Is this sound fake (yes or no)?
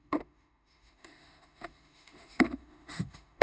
yes